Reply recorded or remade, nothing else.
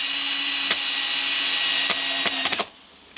recorded